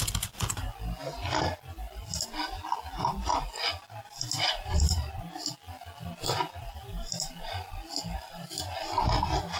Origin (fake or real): real